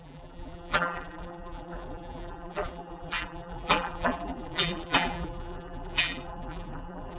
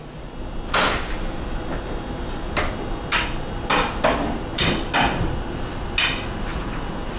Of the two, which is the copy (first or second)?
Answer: first